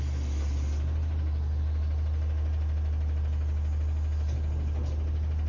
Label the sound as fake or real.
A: real